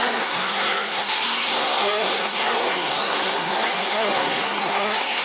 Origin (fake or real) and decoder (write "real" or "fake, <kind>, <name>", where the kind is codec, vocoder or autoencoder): fake, codec, SNAC